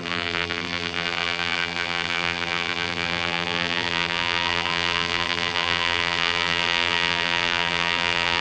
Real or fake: fake